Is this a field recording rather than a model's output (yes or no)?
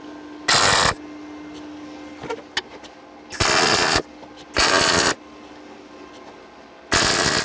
yes